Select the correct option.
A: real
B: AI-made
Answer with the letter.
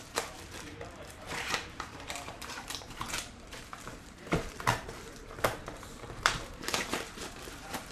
B